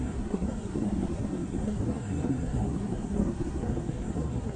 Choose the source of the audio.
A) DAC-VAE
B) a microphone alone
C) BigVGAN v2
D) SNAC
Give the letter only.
D